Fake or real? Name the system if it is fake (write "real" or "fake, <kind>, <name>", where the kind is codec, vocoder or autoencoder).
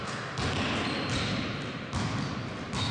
real